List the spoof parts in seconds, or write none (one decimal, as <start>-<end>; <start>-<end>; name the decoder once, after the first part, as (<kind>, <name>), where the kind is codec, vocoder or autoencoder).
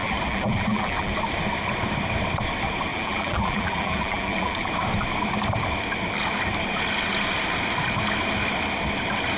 0.0-1.1 (vocoder, BigVGAN v2); 2.9-4.7